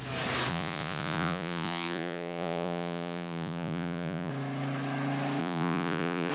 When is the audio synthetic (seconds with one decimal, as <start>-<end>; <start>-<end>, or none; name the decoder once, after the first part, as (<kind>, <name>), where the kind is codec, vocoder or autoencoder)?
0.5-4.3 (vocoder, Vocos); 5.4-6.3